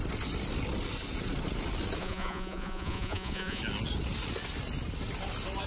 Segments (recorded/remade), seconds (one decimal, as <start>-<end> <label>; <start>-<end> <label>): 0.0-2.0 recorded; 2.0-3.6 remade; 3.6-5.7 recorded